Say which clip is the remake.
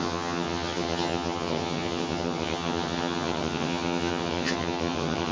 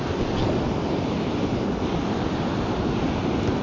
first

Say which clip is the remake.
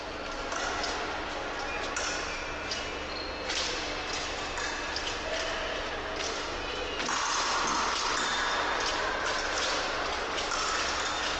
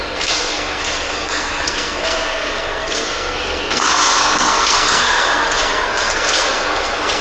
second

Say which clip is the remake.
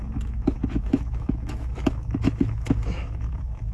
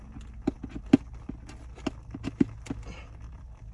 first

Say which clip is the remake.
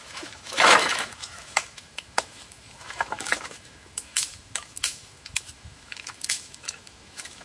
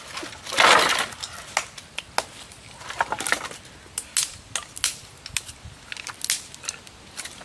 first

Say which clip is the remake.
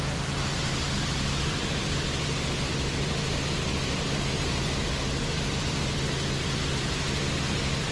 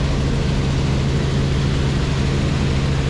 first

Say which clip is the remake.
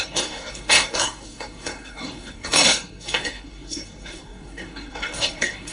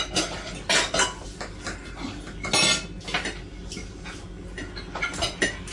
first